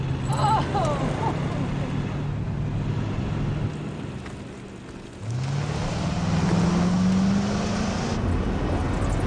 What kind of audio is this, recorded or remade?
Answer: recorded